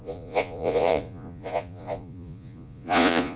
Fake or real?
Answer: fake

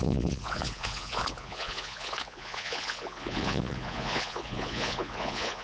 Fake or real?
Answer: fake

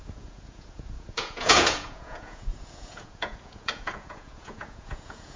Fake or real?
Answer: fake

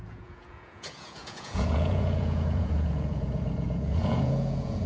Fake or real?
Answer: fake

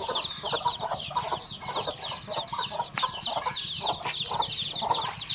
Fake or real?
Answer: real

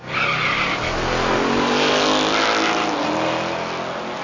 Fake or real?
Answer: real